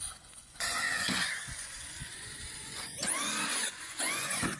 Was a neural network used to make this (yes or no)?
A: yes